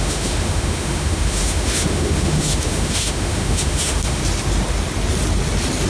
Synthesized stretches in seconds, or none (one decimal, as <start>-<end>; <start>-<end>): 0.0-4.2

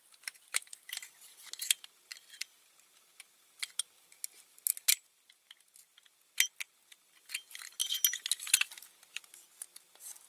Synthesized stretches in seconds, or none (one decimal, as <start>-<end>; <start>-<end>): none

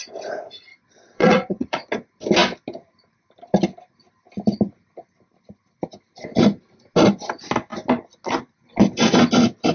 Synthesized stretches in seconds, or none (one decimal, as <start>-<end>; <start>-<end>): 0.7-1.9

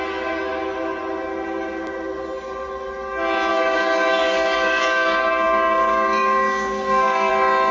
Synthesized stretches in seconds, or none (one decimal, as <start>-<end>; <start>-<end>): 3.5-7.3

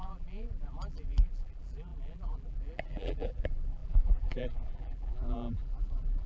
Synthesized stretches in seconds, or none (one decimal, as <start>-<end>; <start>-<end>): 0.0-6.3